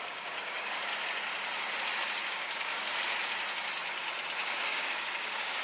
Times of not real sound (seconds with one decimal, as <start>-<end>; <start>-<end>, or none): 0.0-0.9; 2.3-2.9; 4.4-5.6